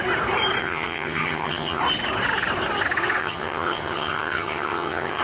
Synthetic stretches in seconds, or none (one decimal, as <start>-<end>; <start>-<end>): 0.6-1.8; 3.2-5.2